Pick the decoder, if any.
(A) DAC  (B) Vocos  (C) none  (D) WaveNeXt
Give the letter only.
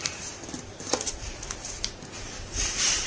C